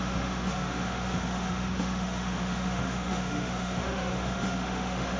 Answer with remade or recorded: remade